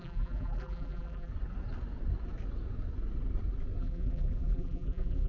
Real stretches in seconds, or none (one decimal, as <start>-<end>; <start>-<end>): 1.3-3.8